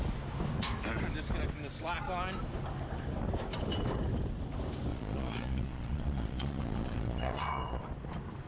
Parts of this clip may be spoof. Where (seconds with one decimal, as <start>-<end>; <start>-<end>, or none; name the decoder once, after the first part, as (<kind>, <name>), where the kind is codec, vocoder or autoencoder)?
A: 4.9-7.8 (vocoder, Vocos)